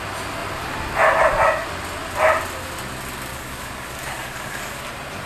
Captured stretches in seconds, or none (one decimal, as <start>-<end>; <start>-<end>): 0.0-3.3; 4.8-5.3